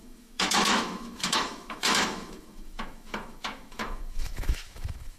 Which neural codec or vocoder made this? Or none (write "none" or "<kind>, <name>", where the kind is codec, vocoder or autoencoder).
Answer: autoencoder, DAC-VAE